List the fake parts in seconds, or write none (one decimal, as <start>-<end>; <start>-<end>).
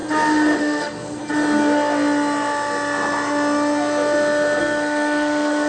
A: 0.6-1.2; 4.6-5.7